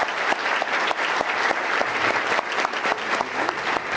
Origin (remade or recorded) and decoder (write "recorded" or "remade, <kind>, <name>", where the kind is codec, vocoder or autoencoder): recorded